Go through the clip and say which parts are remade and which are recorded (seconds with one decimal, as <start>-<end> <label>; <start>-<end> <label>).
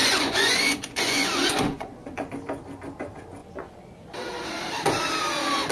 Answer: 0.0-2.3 remade; 2.3-3.4 recorded; 3.4-4.0 remade; 4.0-5.7 recorded